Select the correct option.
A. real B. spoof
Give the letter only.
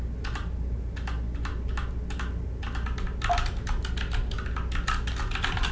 A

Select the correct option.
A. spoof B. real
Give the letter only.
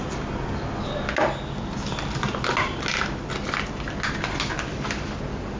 B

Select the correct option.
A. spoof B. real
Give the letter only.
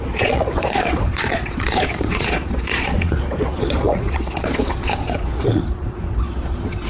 A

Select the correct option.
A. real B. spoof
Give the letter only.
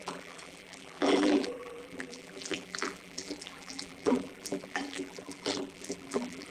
B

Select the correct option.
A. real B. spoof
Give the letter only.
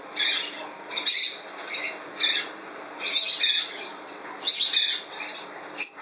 A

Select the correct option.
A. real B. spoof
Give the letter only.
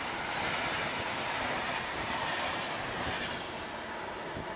A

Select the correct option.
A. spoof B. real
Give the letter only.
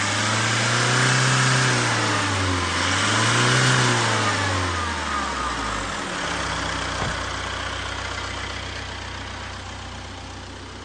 B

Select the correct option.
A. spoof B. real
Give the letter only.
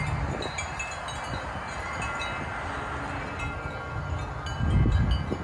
B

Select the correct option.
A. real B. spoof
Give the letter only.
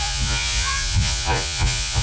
B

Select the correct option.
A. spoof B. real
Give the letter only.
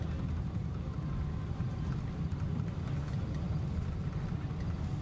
B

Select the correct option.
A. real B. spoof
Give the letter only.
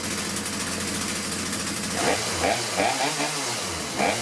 A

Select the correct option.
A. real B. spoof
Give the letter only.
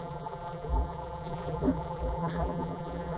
B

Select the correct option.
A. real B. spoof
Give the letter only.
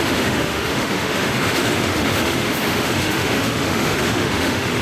B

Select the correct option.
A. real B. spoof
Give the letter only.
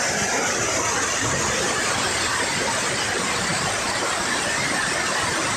B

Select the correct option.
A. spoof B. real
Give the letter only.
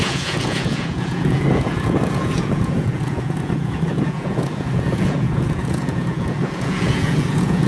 A